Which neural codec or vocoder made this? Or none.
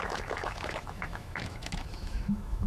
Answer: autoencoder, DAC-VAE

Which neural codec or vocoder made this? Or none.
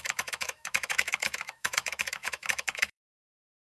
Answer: autoencoder, DAC-VAE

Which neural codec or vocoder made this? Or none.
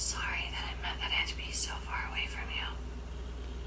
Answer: none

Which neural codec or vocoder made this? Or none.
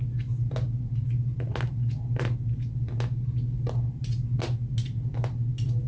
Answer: none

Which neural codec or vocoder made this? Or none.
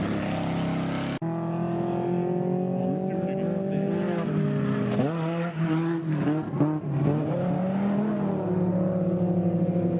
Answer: none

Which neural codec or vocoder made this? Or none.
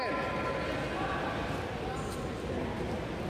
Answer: none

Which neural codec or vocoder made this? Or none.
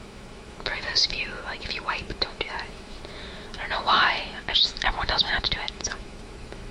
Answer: autoencoder, DAC-VAE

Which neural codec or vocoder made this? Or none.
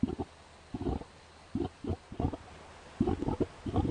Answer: none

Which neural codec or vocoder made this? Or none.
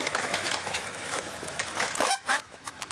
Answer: autoencoder, DAC-VAE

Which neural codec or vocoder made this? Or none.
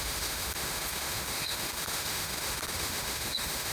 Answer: autoencoder, DAC-VAE